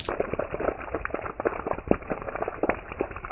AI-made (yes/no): yes